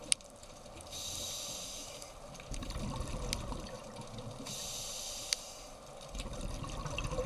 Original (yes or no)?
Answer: yes